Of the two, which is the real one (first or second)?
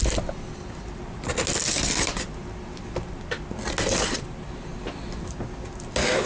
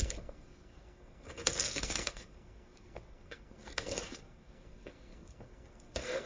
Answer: first